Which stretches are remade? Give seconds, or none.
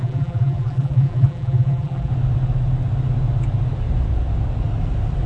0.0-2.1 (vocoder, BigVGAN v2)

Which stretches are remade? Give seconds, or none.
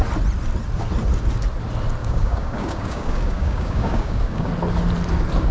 2.0-4.5 (codec, DAC)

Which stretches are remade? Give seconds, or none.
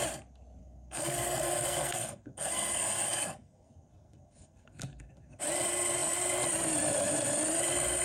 0.6-5.4 (codec, SNAC)